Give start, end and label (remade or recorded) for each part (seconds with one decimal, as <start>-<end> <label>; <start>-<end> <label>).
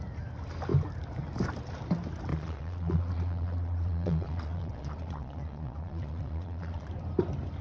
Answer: 0.0-2.3 recorded; 2.3-6.9 remade; 6.9-7.6 recorded